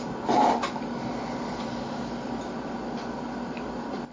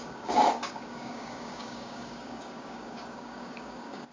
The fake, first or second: second